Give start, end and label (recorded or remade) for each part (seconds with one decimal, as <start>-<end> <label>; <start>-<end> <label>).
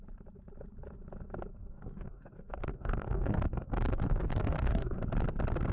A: 0.0-1.6 recorded; 1.6-5.0 remade; 5.0-5.7 recorded